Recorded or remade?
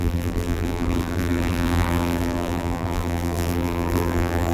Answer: remade